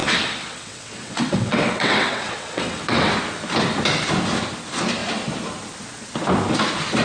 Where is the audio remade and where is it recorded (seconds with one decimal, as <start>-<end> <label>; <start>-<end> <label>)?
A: 0.0-3.1 remade; 3.1-7.0 recorded